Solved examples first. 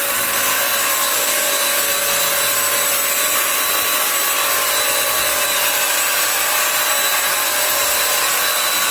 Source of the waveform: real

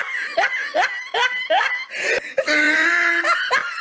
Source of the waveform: real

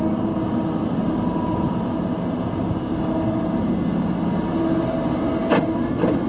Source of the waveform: real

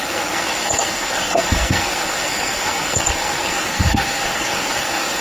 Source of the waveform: fake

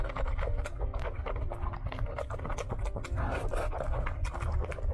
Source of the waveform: real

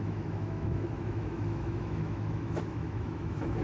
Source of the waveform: fake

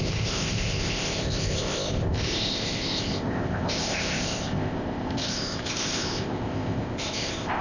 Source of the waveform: fake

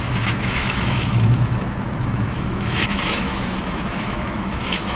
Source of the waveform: fake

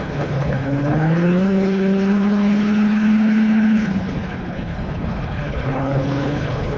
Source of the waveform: fake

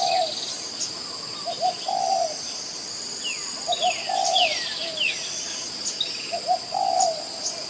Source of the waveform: real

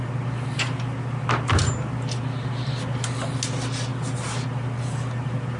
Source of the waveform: real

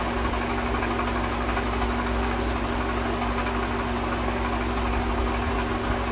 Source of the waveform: real